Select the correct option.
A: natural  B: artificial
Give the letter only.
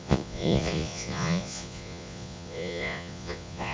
B